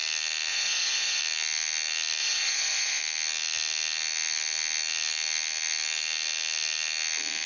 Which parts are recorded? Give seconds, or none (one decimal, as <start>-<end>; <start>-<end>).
0.0-0.5; 1.2-2.2; 3.0-7.5